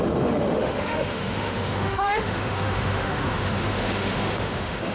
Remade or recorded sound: remade